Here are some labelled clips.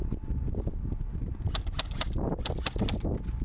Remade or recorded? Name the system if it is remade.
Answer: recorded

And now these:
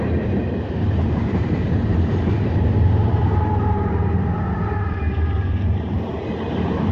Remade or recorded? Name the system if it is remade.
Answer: remade, vocoder, BigVGAN v2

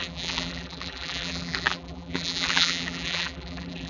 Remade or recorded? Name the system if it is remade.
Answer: remade, vocoder, BigVGAN v2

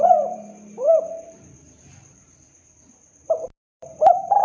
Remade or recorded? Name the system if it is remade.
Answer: remade, vocoder, BigVGAN v2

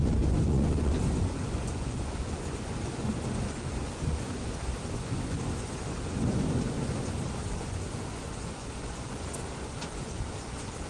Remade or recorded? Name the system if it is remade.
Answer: remade, vocoder, Vocos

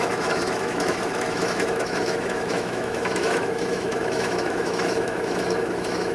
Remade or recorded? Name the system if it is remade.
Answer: remade, autoencoder, DAC-VAE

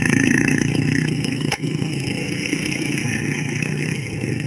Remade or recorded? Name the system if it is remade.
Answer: remade, codec, SNAC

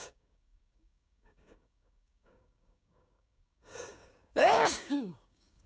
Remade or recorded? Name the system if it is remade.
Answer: remade, codec, DAC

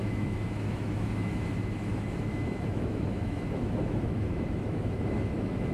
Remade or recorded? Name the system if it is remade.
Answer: remade, autoencoder, DAC-VAE